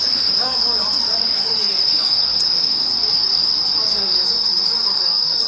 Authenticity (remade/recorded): remade